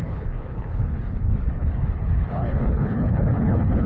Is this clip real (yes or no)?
no